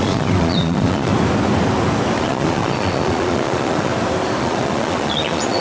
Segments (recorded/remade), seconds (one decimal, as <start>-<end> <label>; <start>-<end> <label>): 0.0-1.1 remade; 1.1-2.2 recorded; 2.2-3.9 remade; 3.9-4.4 recorded; 4.4-5.6 remade